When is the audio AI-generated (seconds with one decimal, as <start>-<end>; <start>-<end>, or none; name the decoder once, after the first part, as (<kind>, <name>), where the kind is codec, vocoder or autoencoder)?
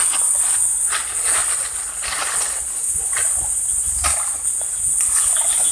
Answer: none